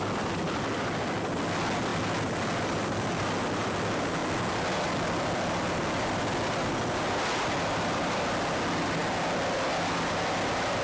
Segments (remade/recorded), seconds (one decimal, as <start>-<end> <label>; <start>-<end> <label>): 0.0-10.8 recorded